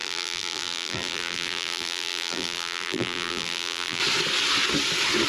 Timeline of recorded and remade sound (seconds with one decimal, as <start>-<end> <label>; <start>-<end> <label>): 0.0-4.0 remade; 4.0-5.3 recorded